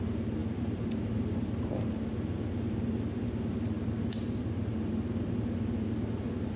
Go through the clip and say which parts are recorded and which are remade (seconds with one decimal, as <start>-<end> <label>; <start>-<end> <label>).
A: 0.0-6.6 recorded